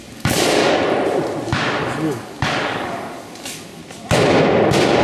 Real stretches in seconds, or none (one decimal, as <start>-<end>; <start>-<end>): 0.6-1.8; 3.8-5.0